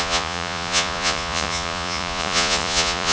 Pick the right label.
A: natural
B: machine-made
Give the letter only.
B